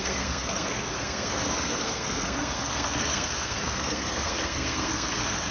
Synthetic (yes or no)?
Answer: yes